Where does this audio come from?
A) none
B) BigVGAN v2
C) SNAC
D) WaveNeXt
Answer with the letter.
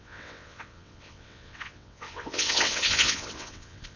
D